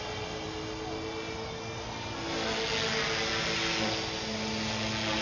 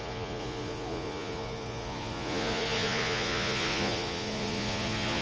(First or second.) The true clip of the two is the first